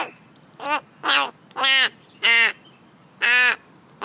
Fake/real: real